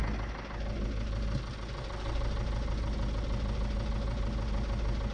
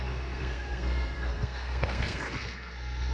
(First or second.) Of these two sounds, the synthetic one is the second